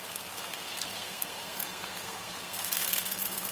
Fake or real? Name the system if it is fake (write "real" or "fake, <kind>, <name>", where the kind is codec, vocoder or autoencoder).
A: fake, codec, SNAC